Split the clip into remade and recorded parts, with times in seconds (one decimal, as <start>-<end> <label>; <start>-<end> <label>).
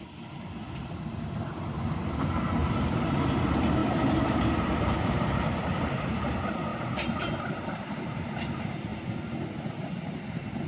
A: 0.0-2.6 recorded; 2.6-3.1 remade; 3.1-3.8 recorded; 3.8-6.3 remade; 6.3-6.7 recorded; 6.7-8.2 remade; 8.2-10.7 recorded